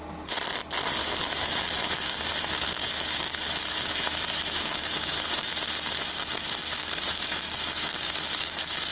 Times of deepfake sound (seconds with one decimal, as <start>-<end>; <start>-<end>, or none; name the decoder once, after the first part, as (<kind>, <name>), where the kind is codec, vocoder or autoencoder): 1.0-5.5 (autoencoder, DAC-VAE); 6.8-8.9